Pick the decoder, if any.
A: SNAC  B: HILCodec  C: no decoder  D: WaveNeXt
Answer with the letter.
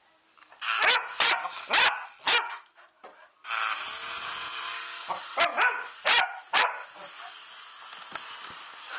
C